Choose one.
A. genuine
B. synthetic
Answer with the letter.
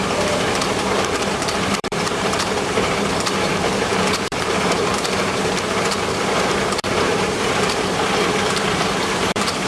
B